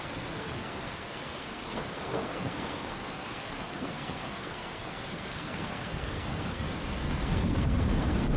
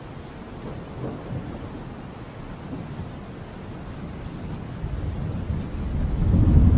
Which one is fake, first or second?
first